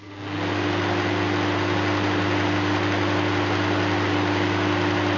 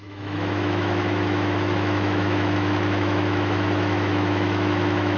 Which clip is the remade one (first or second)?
second